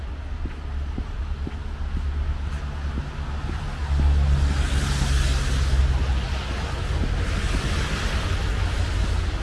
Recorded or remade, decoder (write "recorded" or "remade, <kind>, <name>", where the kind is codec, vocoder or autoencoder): recorded